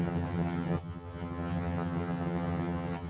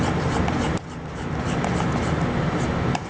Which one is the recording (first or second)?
second